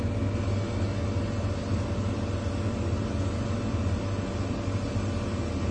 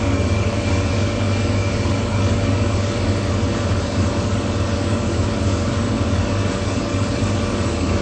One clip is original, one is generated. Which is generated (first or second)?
second